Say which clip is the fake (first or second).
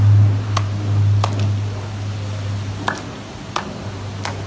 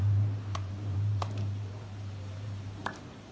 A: second